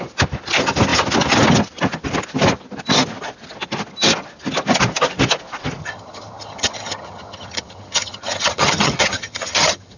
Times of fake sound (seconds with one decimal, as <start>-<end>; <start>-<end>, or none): 5.8-10.0